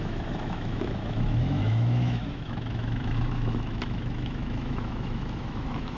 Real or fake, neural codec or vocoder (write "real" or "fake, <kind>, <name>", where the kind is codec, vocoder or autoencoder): fake, autoencoder, DAC-VAE